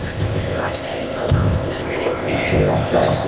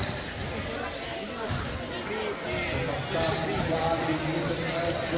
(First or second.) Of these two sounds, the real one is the second